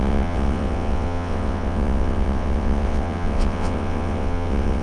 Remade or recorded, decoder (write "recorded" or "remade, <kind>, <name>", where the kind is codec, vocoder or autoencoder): remade, vocoder, WaveNeXt